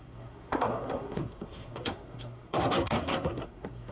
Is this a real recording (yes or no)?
no